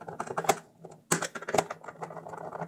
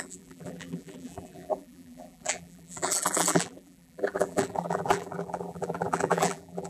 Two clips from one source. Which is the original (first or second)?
first